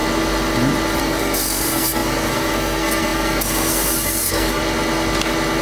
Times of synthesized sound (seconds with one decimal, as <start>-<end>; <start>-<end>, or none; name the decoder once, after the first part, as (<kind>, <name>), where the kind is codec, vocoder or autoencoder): 1.0-4.6 (codec, SNAC)